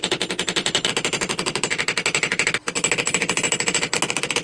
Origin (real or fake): real